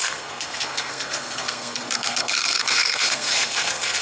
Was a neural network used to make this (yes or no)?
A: yes